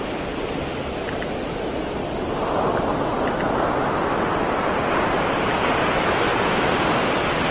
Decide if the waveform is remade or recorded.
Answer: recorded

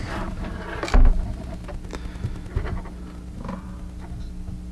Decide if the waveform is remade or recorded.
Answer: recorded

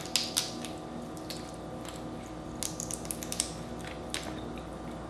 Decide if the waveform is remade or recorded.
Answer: recorded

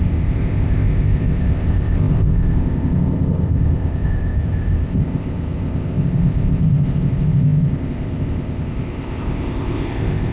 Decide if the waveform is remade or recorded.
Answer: remade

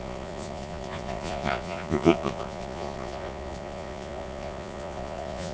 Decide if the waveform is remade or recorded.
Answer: remade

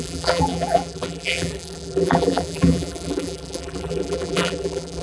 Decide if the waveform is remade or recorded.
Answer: remade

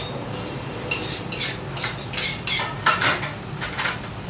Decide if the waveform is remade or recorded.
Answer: recorded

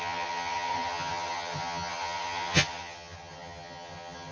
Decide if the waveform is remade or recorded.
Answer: remade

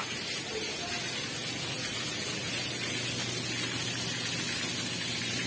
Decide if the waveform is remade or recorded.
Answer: recorded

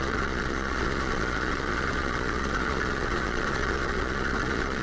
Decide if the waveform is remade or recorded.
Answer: remade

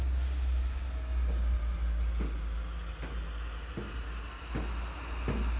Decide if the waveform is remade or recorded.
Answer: recorded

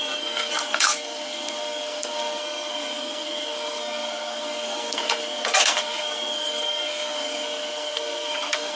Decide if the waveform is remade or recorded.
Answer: remade